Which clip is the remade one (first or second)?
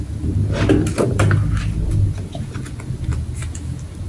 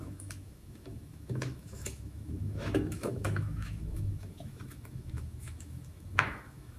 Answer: second